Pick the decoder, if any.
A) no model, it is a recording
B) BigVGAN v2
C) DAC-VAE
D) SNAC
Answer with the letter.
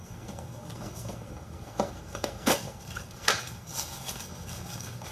D